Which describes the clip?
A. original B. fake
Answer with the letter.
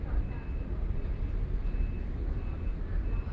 A